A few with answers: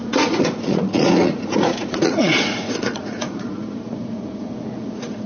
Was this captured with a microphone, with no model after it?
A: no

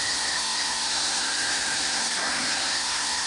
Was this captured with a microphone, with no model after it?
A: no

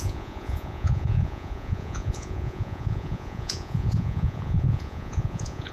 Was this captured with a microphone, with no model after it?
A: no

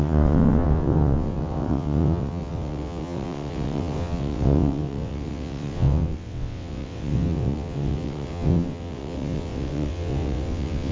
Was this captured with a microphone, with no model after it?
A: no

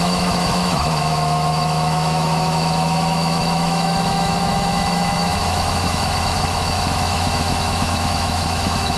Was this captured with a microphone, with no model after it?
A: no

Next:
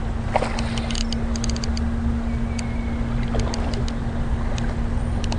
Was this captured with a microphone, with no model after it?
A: yes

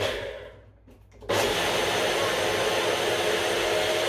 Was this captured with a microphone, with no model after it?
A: yes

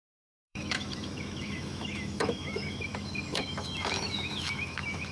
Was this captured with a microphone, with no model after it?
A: no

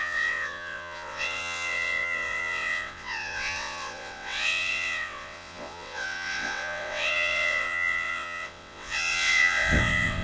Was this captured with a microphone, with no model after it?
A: no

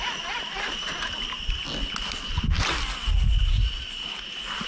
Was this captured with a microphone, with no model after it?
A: yes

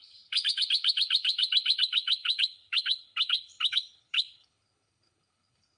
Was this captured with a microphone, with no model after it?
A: no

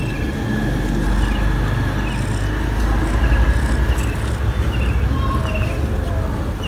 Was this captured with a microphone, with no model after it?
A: yes